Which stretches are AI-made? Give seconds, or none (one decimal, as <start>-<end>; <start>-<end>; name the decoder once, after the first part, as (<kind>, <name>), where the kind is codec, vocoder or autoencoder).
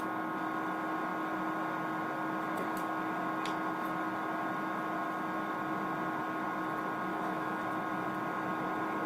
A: 7.1-7.6 (autoencoder, DAC-VAE)